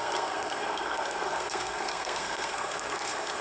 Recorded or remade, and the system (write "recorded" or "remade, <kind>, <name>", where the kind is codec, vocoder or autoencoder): remade, codec, SNAC